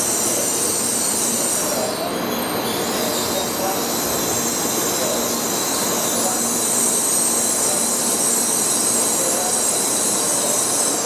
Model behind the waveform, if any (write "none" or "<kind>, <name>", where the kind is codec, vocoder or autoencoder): none